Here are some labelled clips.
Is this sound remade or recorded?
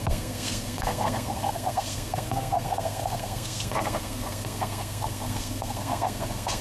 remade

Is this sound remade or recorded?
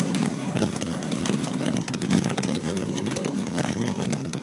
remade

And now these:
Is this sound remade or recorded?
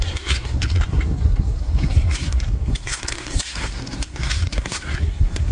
remade